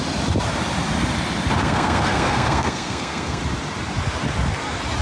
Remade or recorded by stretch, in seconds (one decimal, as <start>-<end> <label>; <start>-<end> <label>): 0.0-1.6 recorded; 1.6-3.4 remade; 3.4-5.0 recorded